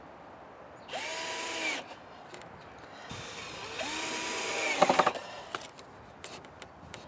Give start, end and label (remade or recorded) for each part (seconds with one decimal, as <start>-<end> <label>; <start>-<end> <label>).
0.0-7.1 recorded